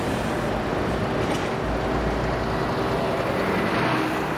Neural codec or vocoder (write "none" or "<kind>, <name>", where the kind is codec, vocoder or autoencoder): none